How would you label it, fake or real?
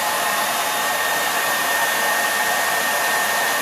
fake